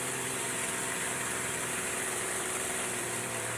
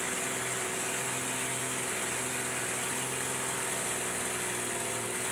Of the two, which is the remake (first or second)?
first